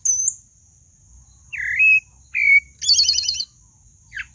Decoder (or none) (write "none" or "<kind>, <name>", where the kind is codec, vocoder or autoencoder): none